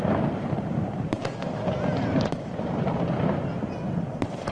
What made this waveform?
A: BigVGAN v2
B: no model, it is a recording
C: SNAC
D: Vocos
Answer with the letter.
B